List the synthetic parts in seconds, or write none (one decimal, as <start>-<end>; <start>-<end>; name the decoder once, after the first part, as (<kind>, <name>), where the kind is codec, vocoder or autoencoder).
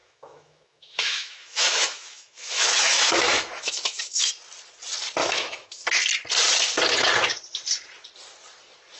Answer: 0.0-4.3 (autoencoder, DAC-VAE); 5.2-5.8